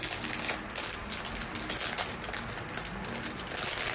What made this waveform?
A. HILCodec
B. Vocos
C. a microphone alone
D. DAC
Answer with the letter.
C